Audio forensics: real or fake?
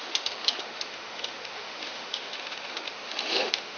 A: fake